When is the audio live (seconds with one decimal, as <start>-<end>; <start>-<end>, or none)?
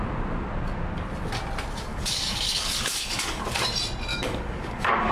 0.0-1.9; 3.4-4.1